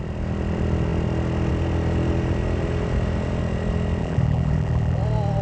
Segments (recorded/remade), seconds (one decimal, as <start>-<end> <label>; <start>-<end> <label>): 0.0-4.0 recorded; 4.0-5.0 remade; 5.0-5.4 recorded